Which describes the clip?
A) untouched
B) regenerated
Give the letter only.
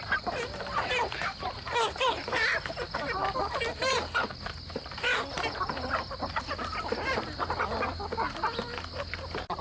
A